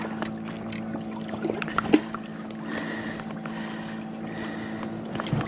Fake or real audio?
real